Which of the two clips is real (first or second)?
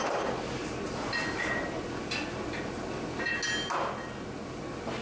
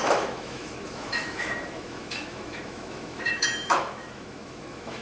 first